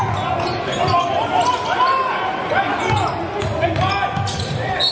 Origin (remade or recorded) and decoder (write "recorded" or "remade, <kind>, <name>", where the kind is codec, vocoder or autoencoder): recorded